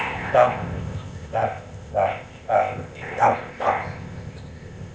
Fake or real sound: fake